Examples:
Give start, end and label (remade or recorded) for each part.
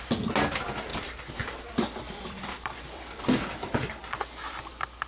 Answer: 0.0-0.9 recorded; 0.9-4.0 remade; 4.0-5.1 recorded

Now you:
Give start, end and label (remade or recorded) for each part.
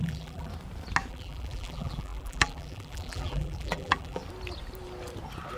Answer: 0.0-0.5 remade; 0.5-1.1 recorded; 1.1-4.2 remade; 4.2-5.6 recorded